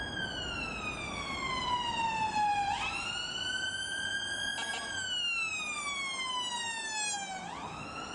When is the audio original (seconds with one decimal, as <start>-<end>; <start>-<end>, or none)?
0.0-8.1